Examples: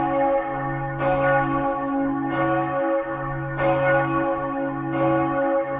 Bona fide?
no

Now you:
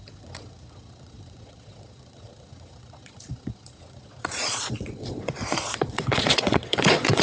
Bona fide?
no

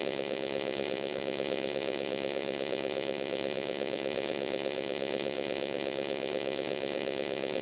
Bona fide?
no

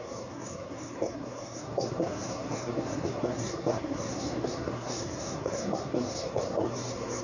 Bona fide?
no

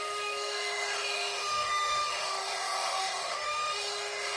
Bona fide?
no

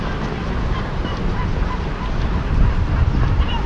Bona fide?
yes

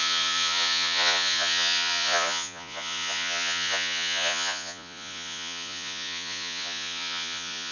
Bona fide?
no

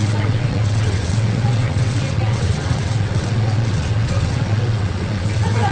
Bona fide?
no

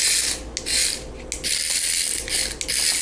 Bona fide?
yes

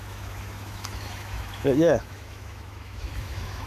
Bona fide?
no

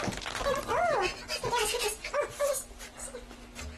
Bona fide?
yes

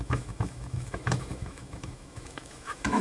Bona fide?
no